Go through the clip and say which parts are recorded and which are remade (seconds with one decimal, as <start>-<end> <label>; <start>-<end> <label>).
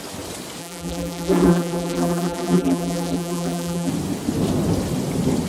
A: 0.0-0.6 recorded; 0.6-3.9 remade; 3.9-5.5 recorded